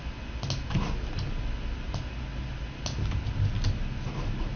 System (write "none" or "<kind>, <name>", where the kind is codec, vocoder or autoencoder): none